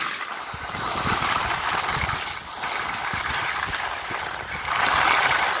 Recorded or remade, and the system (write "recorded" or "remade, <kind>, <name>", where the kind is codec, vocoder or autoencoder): recorded